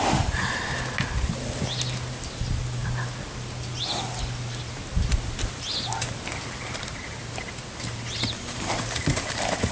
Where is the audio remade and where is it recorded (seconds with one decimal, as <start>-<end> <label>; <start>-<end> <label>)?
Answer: 0.0-9.7 recorded